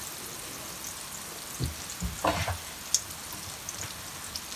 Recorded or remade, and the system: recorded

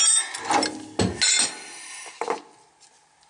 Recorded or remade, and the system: recorded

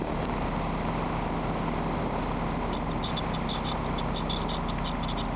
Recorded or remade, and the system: recorded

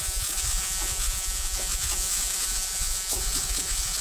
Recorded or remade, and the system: remade, vocoder, Vocos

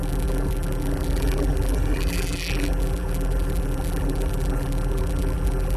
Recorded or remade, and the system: remade, vocoder, BigVGAN v2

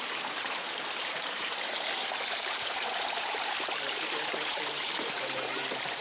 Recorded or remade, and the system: remade, vocoder, BigVGAN v2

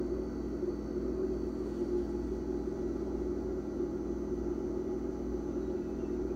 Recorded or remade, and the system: recorded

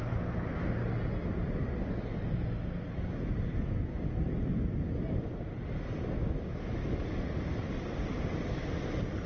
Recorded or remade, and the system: recorded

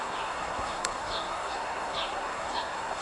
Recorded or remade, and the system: remade, codec, SNAC